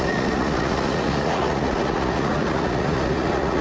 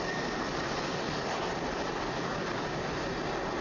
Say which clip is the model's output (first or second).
first